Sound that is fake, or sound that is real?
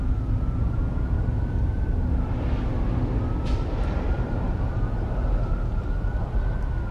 real